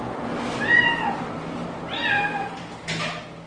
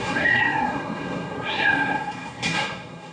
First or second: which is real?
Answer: first